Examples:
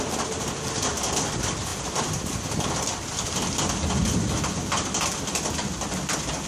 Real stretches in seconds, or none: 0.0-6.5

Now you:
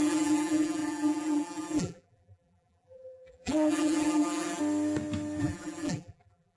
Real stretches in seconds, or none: 4.6-5.4

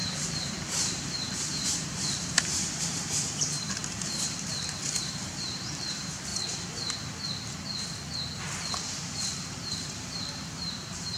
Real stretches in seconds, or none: 6.3-9.6

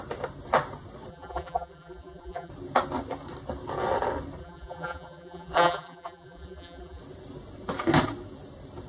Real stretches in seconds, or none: 0.0-1.1; 2.5-4.4; 7.0-8.9